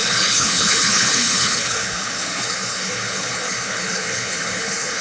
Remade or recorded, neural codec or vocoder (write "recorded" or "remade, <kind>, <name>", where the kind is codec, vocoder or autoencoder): remade, codec, HILCodec